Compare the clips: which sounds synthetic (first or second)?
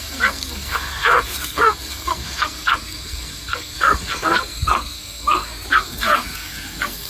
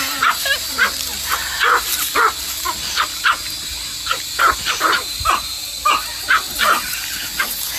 first